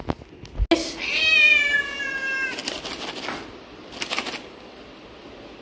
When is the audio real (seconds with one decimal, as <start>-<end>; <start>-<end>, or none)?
0.0-1.2; 2.0-5.6